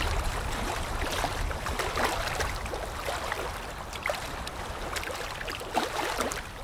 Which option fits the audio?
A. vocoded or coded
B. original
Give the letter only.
A